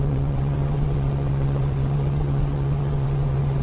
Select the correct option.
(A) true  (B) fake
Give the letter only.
B